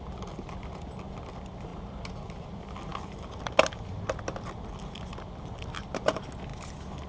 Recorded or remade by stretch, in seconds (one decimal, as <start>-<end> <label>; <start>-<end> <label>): 0.0-7.1 recorded